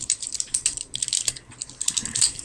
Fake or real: fake